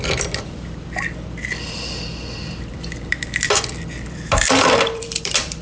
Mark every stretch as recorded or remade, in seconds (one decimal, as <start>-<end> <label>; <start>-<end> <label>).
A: 0.0-5.6 remade